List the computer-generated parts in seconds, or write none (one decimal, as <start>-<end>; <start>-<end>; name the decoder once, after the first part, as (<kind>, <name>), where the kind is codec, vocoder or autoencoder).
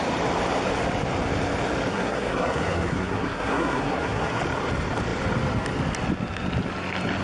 1.9-4.4 (codec, SNAC)